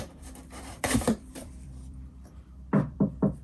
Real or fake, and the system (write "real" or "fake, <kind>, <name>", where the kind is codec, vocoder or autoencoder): fake, vocoder, BigVGAN v2